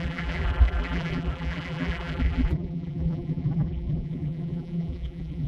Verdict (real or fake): fake